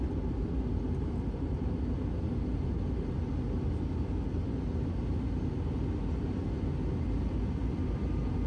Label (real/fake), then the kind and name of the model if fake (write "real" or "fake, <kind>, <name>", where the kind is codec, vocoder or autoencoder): real